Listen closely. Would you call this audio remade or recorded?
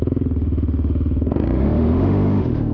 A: remade